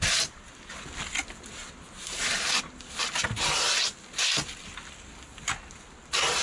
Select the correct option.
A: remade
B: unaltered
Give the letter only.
B